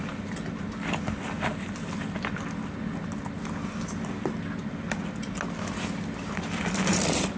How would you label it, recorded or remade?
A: recorded